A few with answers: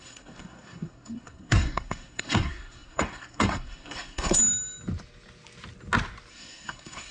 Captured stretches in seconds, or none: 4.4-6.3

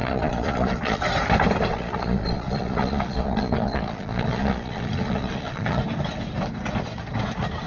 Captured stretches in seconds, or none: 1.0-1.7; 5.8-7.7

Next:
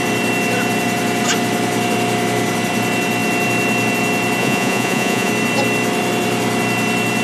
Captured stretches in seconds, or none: 0.0-4.4; 5.3-7.2

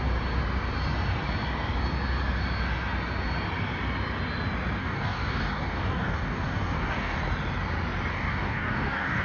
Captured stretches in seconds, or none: 0.0-4.8; 7.2-8.1

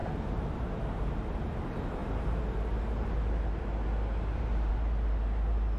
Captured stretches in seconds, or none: 0.0-5.8

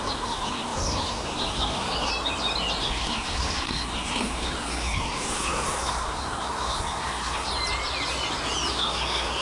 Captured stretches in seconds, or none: 2.1-2.8; 7.5-8.7